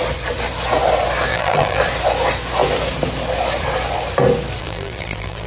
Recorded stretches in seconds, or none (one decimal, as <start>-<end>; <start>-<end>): 0.0-1.3; 1.8-4.6

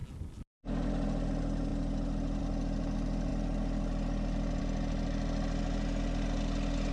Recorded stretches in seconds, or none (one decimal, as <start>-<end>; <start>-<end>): 0.0-6.9

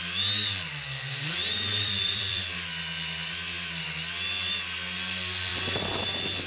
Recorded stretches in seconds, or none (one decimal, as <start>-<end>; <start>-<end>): 0.0-1.4; 3.8-6.5